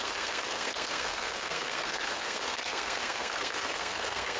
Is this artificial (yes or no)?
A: yes